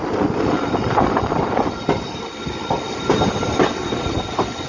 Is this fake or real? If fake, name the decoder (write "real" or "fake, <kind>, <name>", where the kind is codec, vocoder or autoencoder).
real